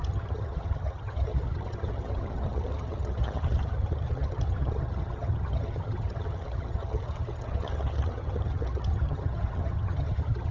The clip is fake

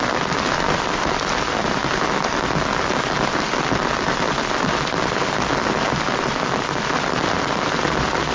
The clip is real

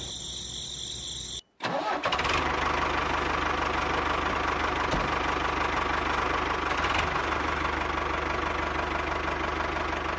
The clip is real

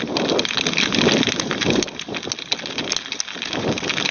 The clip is real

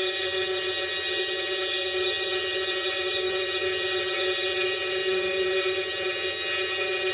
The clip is fake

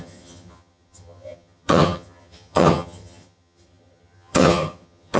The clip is fake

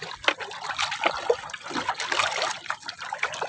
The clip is real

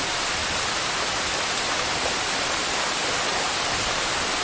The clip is real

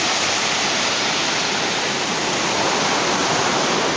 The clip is real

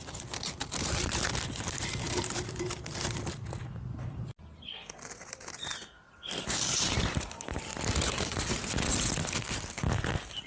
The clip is real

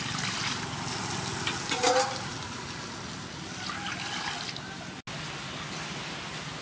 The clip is real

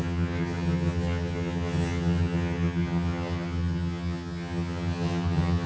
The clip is fake